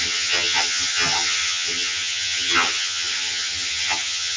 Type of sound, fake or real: fake